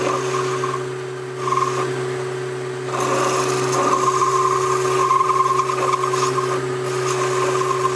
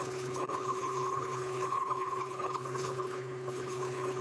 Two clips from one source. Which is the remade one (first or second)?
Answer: second